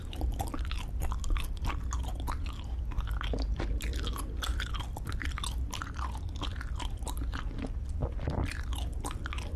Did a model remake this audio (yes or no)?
no